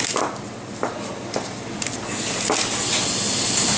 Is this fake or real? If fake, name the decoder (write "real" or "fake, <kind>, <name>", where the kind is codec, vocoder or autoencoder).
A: real